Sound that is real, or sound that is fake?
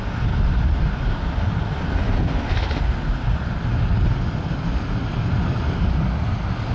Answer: real